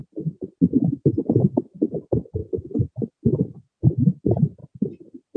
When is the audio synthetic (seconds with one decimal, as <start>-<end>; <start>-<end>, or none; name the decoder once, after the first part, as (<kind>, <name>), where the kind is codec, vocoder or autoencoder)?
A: 4.6-5.4 (vocoder, BigVGAN v2)